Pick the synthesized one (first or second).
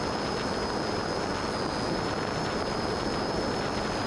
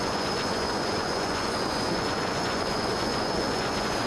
second